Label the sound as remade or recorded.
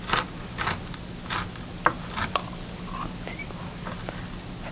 recorded